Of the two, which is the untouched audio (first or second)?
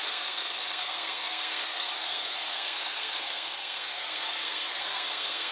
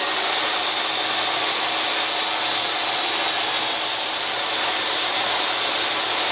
second